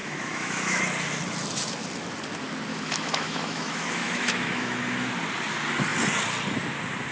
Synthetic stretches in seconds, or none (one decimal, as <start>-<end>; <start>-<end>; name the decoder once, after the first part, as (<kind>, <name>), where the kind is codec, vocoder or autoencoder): 0.0-0.8 (autoencoder, DAC-VAE); 2.7-5.1